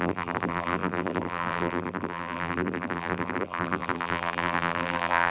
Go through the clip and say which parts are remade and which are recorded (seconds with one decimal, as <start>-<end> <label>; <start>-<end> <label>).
0.0-5.3 remade